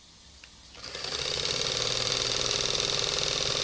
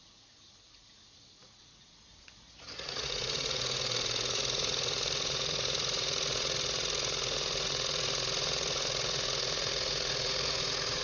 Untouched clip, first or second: first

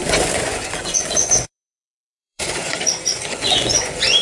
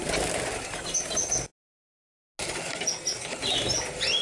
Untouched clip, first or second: second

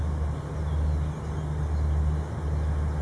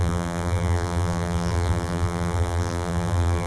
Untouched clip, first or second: first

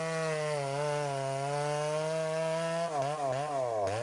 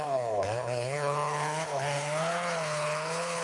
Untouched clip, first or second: first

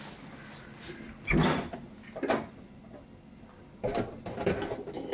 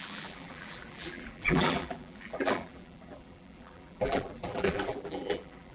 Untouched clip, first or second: first